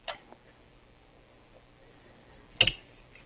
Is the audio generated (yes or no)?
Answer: no